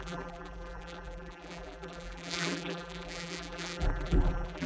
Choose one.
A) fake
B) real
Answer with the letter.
A